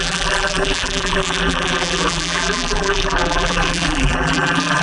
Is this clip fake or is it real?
fake